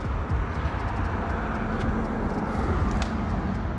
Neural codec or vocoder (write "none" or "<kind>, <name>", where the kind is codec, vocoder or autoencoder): none